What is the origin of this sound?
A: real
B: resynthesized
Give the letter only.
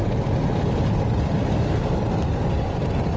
A